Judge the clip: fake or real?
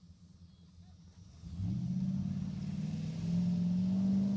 real